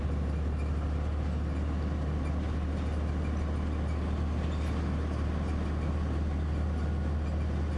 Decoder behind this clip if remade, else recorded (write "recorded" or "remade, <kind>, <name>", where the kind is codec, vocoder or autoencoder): recorded